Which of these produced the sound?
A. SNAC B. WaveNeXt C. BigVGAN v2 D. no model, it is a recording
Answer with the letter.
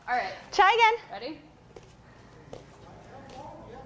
D